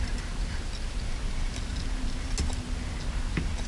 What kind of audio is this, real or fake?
real